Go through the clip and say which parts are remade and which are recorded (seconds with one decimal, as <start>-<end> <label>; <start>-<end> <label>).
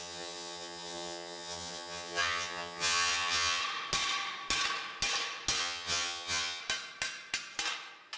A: 0.0-3.6 remade; 3.6-5.6 recorded; 5.6-6.6 remade; 6.6-8.2 recorded